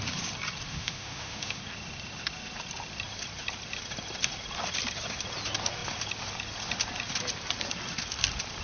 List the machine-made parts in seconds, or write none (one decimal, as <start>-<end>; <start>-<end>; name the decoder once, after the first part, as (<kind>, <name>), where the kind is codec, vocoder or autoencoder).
0.7-1.6 (autoencoder, DAC-VAE)